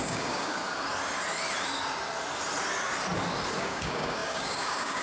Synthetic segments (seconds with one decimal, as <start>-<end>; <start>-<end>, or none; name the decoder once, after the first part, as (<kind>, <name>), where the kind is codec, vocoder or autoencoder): 0.0-0.6 (codec, DAC); 3.6-5.0